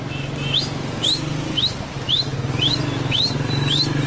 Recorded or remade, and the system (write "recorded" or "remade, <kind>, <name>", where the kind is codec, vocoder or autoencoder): recorded